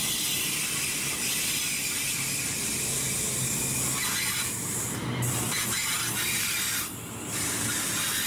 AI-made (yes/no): no